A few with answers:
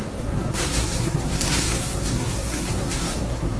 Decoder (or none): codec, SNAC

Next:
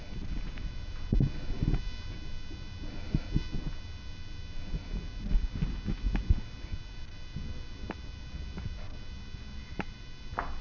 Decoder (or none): none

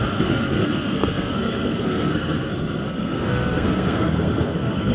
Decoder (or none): codec, SNAC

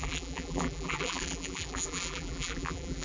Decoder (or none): vocoder, BigVGAN v2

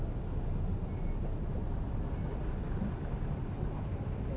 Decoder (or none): none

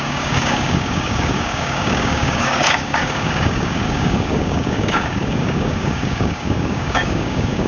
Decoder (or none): codec, DAC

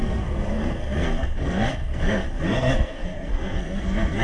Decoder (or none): codec, SNAC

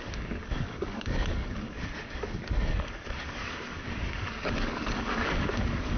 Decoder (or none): codec, DAC